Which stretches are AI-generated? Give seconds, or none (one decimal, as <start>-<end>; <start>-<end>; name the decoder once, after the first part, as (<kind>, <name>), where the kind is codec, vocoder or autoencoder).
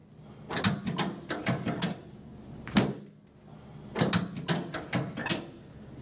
none